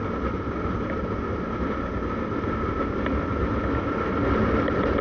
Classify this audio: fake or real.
real